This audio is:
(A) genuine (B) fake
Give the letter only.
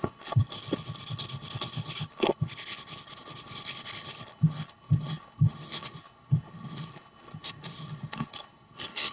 B